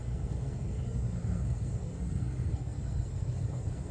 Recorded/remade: remade